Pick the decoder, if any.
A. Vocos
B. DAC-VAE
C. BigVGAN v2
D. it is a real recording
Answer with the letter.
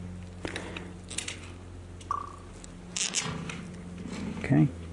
D